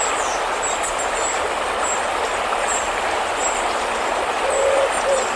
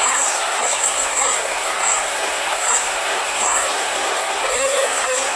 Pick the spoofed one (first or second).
second